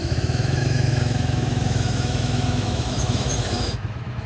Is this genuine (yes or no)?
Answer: no